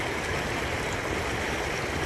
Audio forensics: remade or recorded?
recorded